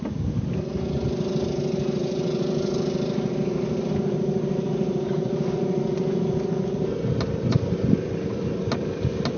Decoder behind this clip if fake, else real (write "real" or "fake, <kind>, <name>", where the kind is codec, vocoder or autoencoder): real